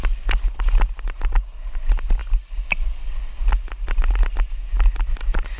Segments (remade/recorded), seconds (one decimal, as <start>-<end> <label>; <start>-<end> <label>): 0.0-5.6 recorded